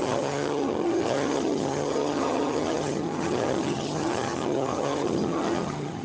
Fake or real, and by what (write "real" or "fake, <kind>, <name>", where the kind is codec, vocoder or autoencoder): fake, vocoder, HiFi-GAN